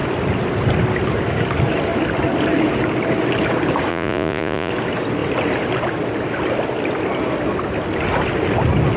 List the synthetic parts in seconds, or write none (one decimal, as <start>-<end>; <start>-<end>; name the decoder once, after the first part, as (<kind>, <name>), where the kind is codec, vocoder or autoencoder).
3.9-4.7 (vocoder, Vocos)